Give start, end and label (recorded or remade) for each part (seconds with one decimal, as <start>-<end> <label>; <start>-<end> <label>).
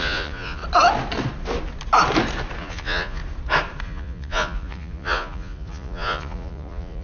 0.0-0.6 remade; 0.6-2.6 recorded; 2.6-3.2 remade; 3.2-3.8 recorded; 3.8-7.0 remade